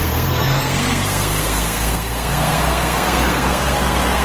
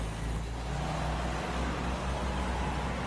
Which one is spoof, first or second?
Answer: first